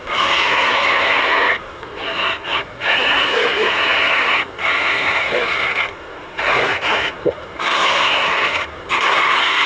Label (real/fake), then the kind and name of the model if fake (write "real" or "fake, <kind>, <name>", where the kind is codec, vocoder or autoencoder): fake, codec, SNAC